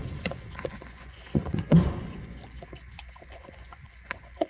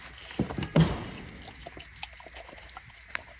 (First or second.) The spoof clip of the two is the first